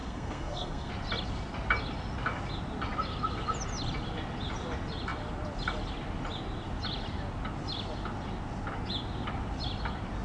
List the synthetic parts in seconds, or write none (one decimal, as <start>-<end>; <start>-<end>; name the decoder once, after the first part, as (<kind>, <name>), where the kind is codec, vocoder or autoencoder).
0.0-0.9 (codec, SNAC)